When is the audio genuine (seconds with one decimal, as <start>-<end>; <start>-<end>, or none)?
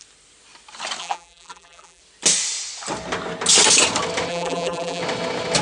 0.0-1.0; 2.0-4.3; 5.0-5.6